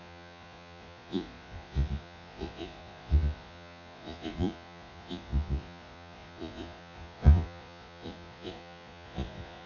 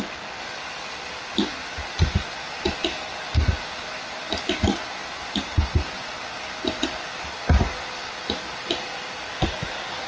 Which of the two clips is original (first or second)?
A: second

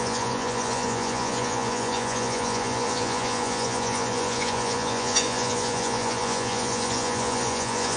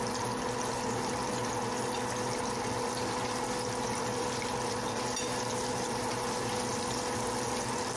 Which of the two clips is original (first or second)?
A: second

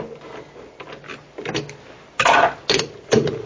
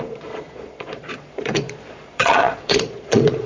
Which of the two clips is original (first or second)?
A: first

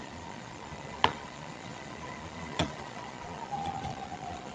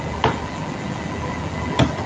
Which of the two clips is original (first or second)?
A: second